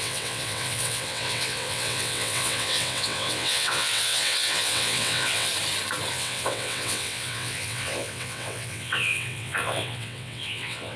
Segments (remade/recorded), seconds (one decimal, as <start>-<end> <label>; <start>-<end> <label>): 0.0-5.5 remade; 5.5-6.1 recorded; 6.1-11.0 remade